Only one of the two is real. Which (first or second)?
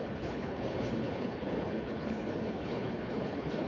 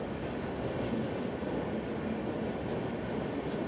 second